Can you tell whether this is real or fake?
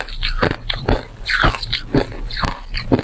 real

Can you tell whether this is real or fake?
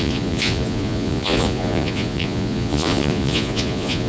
fake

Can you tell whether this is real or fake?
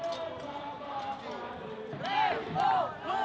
fake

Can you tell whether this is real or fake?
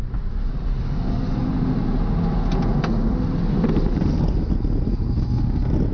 real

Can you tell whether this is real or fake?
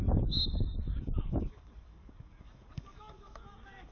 fake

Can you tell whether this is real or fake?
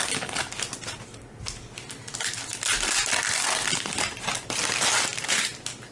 real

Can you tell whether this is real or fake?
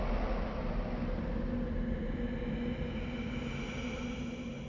real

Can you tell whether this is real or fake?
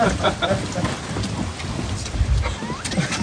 real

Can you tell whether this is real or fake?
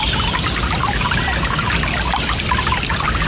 real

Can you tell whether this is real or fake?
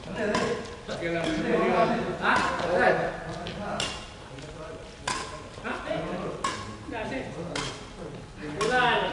real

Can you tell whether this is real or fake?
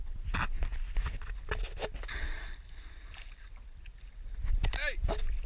real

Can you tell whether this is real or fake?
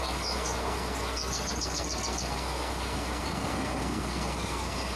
fake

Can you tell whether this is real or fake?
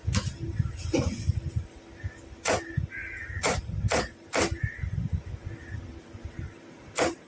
real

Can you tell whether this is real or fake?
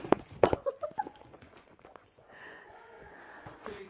fake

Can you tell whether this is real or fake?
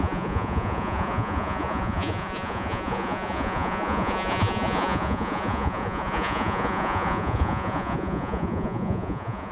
fake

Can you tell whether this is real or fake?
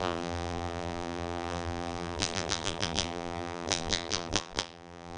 fake